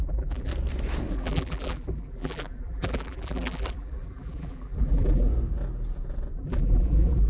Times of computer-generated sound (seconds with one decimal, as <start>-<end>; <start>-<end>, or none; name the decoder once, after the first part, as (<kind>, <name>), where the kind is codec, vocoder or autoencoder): 0.0-0.5 (vocoder, BigVGAN v2); 1.1-5.3; 6.3-7.3